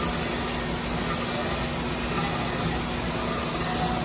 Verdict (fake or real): real